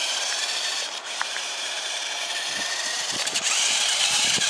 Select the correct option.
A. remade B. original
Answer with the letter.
A